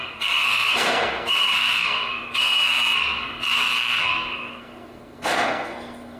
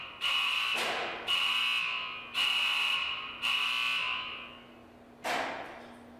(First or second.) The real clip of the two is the second